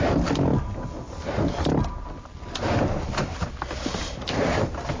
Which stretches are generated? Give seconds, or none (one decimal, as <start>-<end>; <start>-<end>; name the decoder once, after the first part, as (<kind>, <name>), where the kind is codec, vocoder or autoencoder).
none